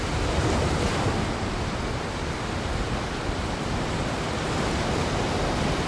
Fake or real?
real